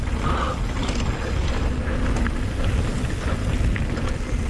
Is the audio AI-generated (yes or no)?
no